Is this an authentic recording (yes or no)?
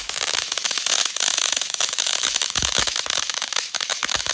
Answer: no